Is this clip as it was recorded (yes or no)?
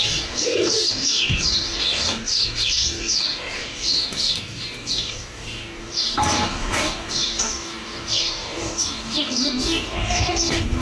no